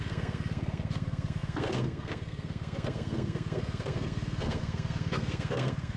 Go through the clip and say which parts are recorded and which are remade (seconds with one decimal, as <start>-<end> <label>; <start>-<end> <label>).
0.0-6.0 remade